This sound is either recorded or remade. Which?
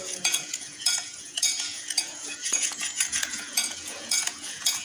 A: remade